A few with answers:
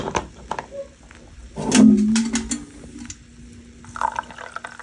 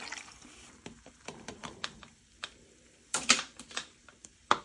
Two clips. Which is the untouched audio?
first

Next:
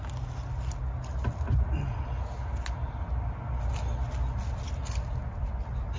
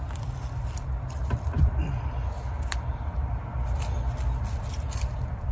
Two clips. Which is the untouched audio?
first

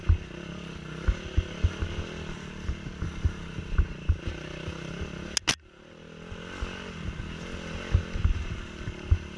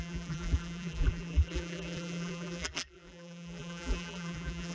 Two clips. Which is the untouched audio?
first